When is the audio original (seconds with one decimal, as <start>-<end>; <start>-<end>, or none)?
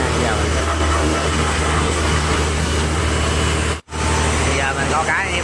0.0-0.6; 3.0-5.4